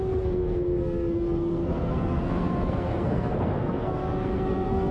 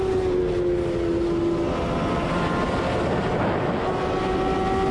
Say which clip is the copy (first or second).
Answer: first